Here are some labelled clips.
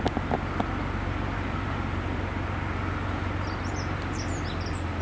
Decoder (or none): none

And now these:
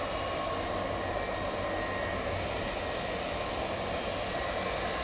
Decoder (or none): none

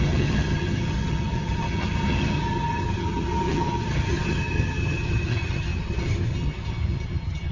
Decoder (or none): vocoder, HiFi-GAN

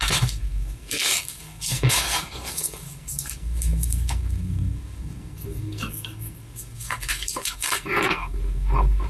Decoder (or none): codec, SNAC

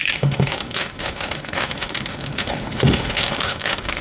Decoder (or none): autoencoder, DAC-VAE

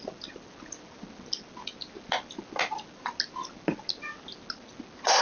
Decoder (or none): none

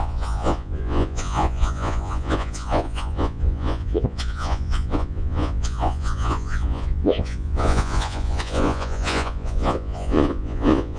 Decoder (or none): vocoder, Vocos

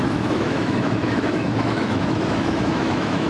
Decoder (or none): autoencoder, DAC-VAE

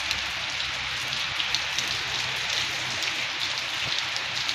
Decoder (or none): none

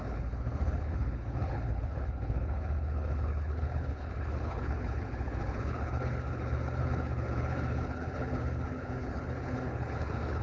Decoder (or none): codec, HILCodec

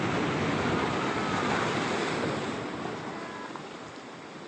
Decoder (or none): none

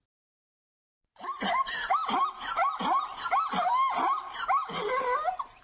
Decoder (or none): none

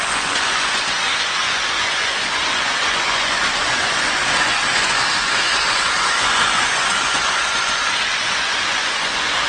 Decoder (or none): vocoder, Vocos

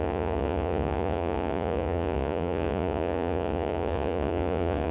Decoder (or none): vocoder, Vocos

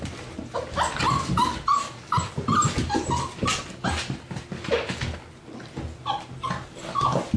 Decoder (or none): none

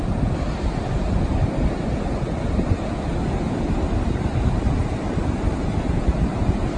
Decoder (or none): none